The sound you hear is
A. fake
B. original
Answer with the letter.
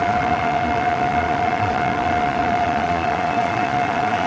A